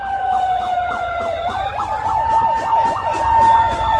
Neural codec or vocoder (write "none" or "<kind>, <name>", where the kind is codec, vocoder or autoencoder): vocoder, Vocos